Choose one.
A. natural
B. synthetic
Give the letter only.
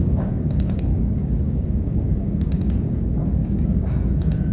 B